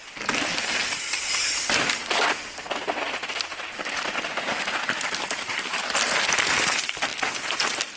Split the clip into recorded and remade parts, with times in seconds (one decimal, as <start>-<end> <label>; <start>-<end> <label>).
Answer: 0.0-8.0 recorded